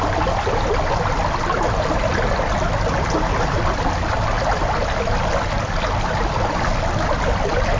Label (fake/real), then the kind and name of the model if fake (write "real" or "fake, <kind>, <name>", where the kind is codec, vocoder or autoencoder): real